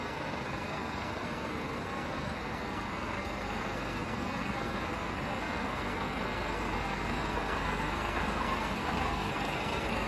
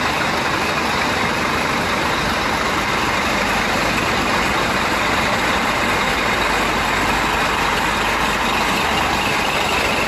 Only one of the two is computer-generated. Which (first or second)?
first